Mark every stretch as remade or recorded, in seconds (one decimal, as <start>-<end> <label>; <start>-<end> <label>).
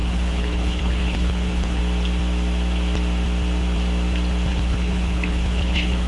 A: 0.0-1.8 remade; 1.8-4.5 recorded; 4.5-6.1 remade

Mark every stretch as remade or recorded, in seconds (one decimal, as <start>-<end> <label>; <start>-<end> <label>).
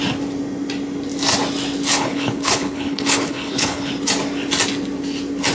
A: 0.0-1.9 recorded; 1.9-3.9 remade; 3.9-5.5 recorded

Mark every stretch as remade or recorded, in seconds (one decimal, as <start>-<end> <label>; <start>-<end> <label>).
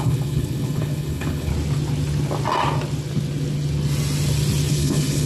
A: 0.0-1.5 remade; 1.5-4.7 recorded; 4.7-5.3 remade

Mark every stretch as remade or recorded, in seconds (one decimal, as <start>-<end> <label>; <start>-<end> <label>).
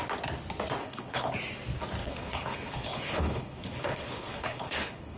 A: 0.0-0.8 recorded; 0.8-1.3 remade; 1.3-2.0 recorded; 2.0-5.2 remade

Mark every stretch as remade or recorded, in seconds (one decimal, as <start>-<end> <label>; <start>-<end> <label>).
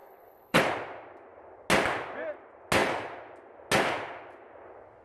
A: 0.0-0.6 remade; 0.6-5.0 recorded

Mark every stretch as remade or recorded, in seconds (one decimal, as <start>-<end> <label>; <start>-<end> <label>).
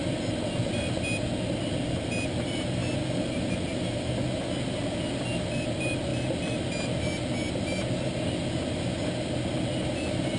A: 0.0-10.4 recorded